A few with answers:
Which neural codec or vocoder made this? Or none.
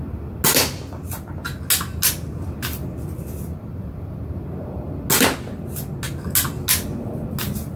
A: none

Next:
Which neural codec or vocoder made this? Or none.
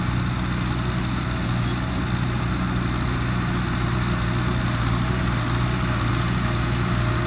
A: none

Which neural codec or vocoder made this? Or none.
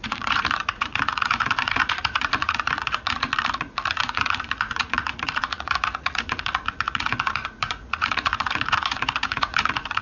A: vocoder, Vocos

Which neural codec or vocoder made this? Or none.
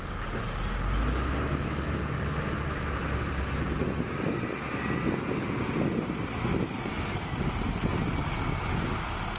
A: none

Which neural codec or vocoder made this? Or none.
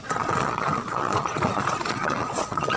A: vocoder, Vocos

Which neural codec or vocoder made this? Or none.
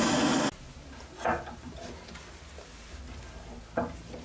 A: none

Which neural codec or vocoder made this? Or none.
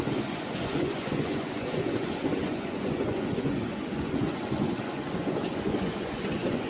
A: vocoder, Vocos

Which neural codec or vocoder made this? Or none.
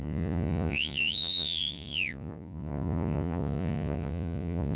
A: vocoder, Vocos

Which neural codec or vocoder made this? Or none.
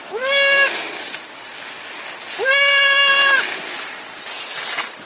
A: none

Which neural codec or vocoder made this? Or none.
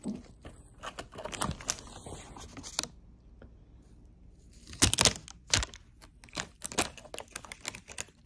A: none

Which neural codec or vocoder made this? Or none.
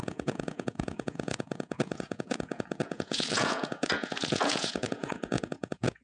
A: vocoder, Vocos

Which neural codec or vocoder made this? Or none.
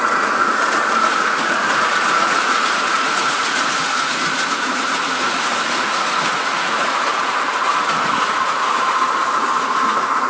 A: vocoder, Vocos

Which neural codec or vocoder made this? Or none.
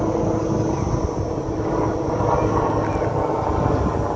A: none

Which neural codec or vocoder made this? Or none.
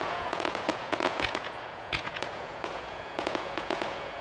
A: vocoder, Vocos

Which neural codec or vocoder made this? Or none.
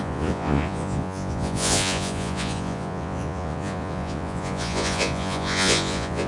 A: vocoder, Vocos